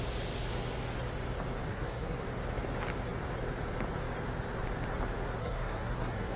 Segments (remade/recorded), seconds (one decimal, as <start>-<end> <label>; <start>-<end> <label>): 0.0-1.7 recorded; 1.7-2.2 remade; 2.2-5.4 recorded; 5.4-6.4 remade